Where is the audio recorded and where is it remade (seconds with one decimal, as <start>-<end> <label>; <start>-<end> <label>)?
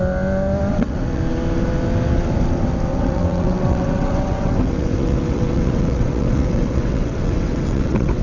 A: 0.0-0.7 recorded; 0.7-1.2 remade; 1.2-2.9 recorded; 2.9-8.2 remade